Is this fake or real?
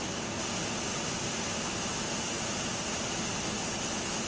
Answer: real